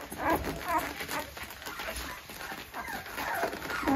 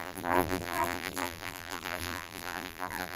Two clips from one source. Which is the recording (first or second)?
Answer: first